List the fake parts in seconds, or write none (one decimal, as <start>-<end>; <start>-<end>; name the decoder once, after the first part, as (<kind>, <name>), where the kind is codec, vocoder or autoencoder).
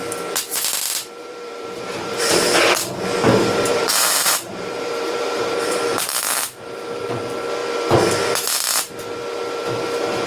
1.2-2.8 (vocoder, BigVGAN v2); 3.3-7.0